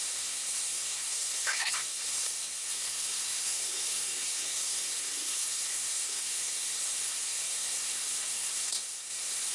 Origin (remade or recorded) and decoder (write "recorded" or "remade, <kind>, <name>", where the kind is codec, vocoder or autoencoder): remade, codec, SNAC